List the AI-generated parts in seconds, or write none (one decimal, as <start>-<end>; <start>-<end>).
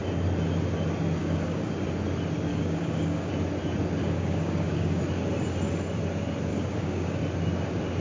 1.2-1.7; 2.5-3.3; 4.0-5.0; 6.5-7.2